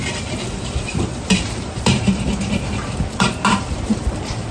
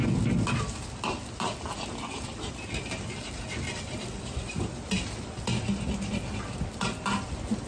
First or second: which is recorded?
second